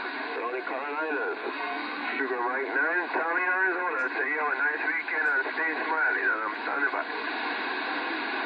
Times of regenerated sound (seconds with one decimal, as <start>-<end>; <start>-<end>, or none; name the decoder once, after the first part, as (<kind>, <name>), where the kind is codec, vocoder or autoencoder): 1.4-2.2 (codec, SNAC)